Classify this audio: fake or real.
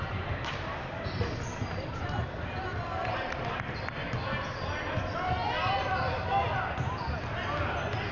real